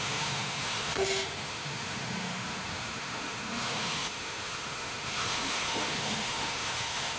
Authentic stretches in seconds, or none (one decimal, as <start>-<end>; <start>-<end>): none